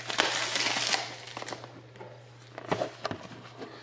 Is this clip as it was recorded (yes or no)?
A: yes